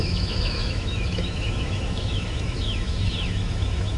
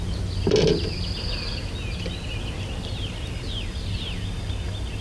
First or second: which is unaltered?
second